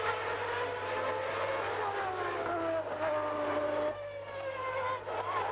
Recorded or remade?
recorded